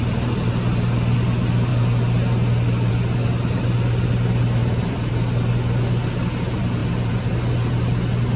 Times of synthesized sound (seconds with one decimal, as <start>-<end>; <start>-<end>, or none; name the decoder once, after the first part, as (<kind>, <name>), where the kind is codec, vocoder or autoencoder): 4.6-5.1 (vocoder, BigVGAN v2); 6.8-7.3